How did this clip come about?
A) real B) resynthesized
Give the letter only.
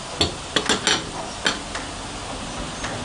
A